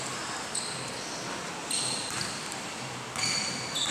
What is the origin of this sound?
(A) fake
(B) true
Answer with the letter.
B